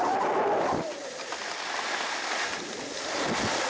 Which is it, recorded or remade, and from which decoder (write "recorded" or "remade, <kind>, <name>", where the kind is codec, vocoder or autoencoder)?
recorded